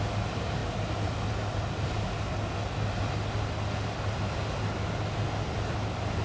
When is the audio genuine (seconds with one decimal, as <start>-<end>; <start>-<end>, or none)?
0.0-6.2